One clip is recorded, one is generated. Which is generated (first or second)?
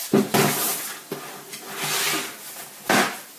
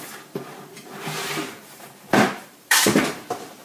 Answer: second